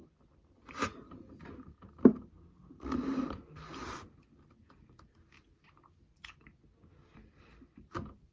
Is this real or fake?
real